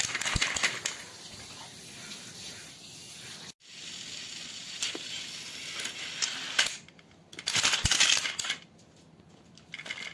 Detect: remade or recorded recorded